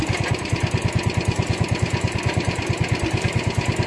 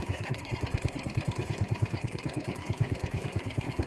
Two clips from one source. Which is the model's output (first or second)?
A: second